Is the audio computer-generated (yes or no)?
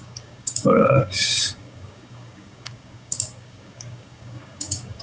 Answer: yes